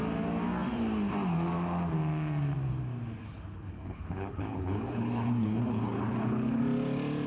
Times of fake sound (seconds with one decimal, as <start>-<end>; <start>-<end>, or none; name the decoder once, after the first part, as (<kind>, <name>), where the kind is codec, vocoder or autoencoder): 3.2-6.6 (codec, HILCodec)